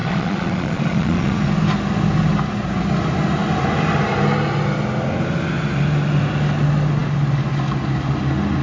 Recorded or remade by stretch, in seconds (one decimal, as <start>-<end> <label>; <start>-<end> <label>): 0.0-1.4 remade; 1.4-8.6 recorded